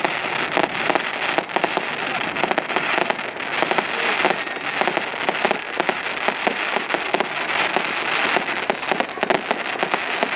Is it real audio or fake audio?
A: real